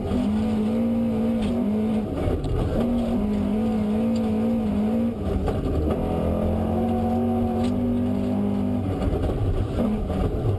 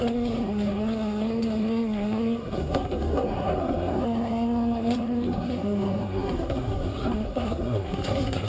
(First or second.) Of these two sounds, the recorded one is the first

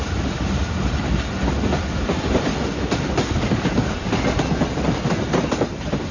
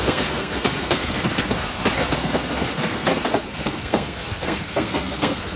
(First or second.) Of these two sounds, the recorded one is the first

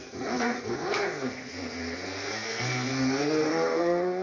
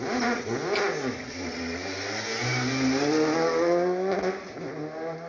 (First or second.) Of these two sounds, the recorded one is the second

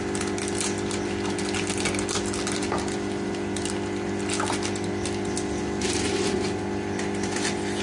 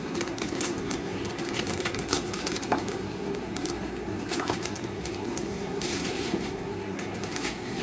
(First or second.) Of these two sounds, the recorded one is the first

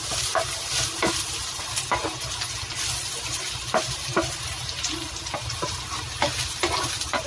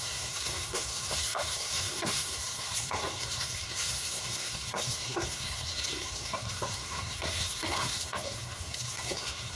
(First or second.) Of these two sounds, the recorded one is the first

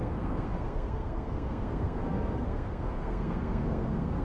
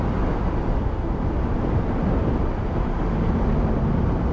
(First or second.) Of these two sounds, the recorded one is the second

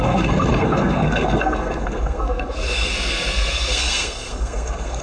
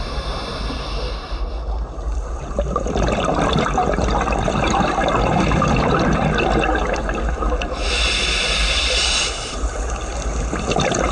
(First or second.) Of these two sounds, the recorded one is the second